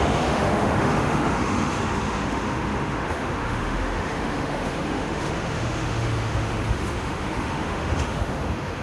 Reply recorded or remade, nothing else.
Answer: remade